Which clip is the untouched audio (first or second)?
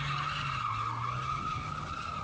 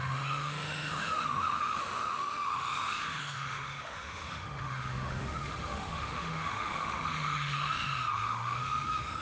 first